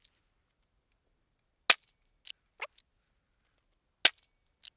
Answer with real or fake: real